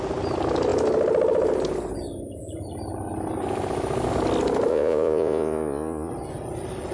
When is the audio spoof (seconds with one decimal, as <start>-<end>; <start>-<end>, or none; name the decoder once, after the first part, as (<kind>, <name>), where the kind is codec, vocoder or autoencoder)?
4.7-6.1 (vocoder, Vocos)